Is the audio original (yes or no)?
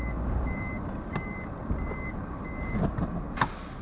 yes